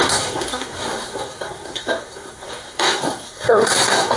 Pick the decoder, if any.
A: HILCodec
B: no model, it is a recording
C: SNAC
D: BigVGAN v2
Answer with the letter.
C